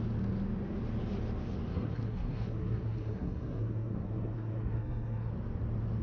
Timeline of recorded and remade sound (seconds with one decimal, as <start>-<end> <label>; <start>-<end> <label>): 0.0-1.7 recorded; 1.7-5.3 remade; 5.3-6.0 recorded